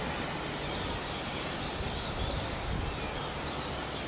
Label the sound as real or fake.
real